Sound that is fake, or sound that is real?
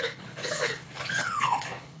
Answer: fake